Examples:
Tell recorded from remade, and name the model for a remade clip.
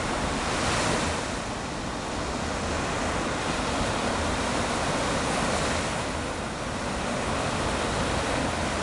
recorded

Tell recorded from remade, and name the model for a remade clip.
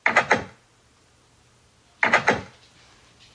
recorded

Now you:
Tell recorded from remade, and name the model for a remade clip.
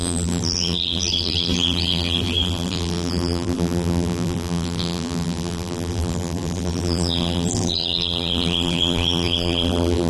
remade, vocoder, BigVGAN v2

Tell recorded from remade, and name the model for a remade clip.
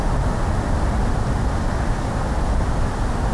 recorded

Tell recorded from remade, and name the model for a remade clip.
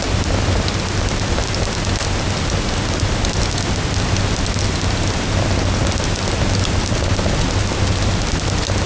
recorded